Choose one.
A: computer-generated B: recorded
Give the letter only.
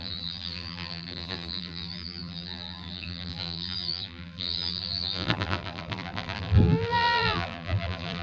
A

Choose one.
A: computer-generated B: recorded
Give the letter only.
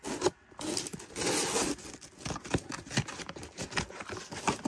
B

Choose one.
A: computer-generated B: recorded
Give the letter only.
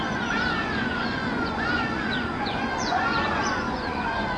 A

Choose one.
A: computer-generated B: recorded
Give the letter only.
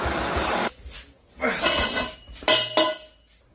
B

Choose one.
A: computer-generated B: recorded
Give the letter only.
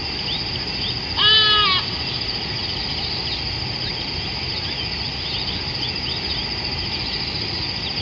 B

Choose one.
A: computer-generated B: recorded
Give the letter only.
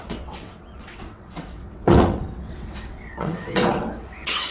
A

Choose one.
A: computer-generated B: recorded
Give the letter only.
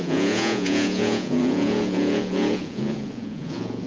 A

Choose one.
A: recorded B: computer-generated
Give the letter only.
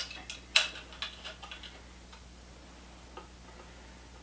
A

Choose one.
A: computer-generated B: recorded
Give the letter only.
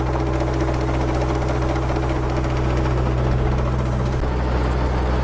B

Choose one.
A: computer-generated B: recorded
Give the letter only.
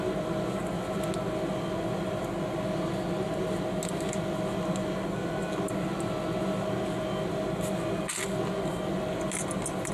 B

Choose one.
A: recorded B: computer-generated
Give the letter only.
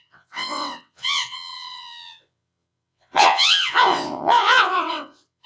B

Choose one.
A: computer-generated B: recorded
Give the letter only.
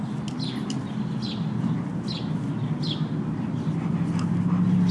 B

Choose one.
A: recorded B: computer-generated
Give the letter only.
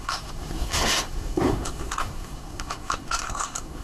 B